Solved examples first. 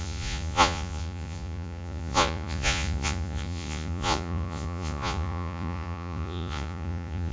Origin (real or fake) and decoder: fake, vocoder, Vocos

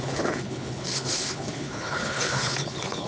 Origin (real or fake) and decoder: fake, codec, HILCodec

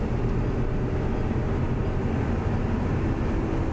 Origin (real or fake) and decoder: real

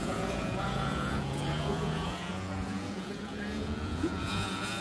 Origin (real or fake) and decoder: fake, vocoder, Vocos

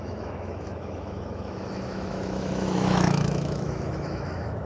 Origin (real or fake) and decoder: fake, autoencoder, DAC-VAE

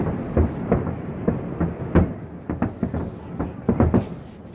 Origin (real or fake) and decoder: real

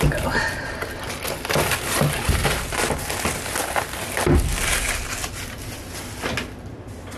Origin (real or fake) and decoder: real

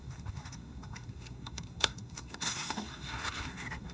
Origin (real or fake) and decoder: fake, codec, SNAC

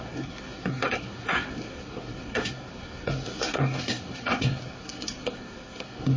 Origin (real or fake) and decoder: fake, codec, SNAC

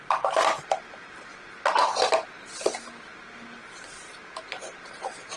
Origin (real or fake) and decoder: real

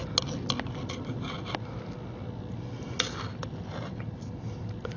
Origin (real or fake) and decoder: real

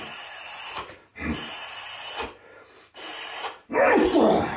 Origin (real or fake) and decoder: fake, vocoder, BigVGAN v2